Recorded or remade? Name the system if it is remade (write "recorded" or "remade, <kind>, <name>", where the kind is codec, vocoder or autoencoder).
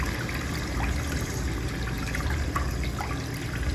recorded